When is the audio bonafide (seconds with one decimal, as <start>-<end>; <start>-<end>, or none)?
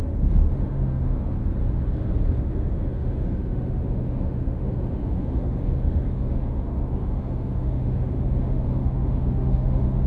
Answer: 1.4-2.4